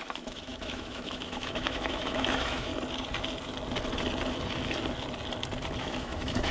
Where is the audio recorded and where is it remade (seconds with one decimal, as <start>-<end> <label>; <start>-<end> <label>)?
0.0-2.7 remade; 2.7-5.8 recorded; 5.8-6.5 remade

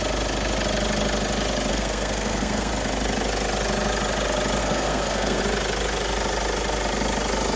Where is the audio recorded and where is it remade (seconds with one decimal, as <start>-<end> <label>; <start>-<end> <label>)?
0.0-1.7 recorded; 1.7-2.7 remade; 2.7-4.6 recorded; 4.6-5.4 remade; 5.4-7.6 recorded

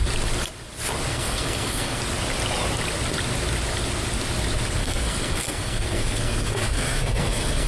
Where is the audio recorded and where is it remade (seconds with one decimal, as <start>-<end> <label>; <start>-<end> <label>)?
0.0-1.1 recorded; 1.1-2.0 remade; 2.0-4.8 recorded; 4.8-7.7 remade